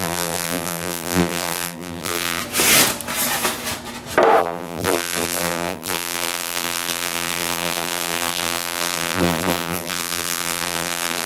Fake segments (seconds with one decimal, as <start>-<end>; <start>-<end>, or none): 0.0-2.4; 4.4-11.3